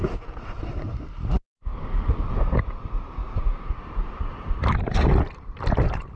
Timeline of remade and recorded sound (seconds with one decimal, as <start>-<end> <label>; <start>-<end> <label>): 0.0-6.2 recorded